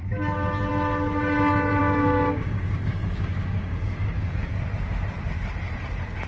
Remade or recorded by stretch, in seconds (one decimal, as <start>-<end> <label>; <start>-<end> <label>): 0.0-1.8 recorded; 1.8-4.5 remade; 4.5-6.3 recorded